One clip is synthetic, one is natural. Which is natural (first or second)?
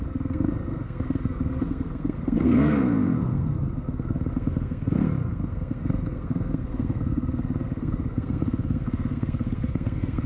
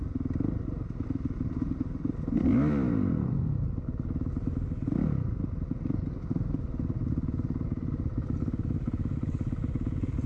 second